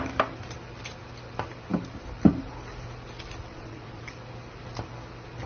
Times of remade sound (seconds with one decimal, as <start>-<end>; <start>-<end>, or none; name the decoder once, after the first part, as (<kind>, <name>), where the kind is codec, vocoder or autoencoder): 3.5-4.0 (vocoder, Vocos)